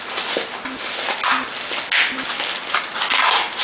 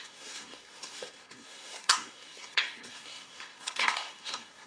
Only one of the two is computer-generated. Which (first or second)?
second